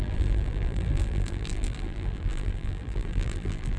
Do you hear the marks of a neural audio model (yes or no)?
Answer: yes